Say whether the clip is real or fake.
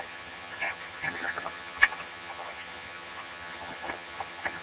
fake